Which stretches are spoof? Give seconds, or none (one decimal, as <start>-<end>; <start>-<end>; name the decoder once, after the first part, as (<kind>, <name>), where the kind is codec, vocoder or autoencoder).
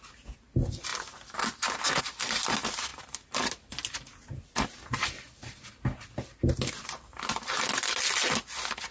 none